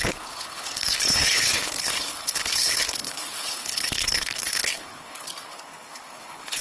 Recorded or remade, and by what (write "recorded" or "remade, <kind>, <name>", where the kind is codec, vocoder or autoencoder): remade, codec, HILCodec